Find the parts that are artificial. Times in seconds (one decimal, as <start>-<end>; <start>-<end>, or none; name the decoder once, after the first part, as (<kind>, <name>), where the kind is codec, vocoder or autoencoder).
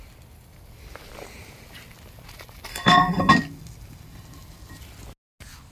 2.7-3.3 (codec, SNAC)